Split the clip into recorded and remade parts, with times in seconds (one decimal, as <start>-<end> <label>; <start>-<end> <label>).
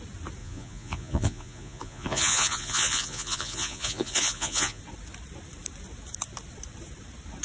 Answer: 0.0-0.4 recorded; 0.4-4.8 remade; 4.8-7.4 recorded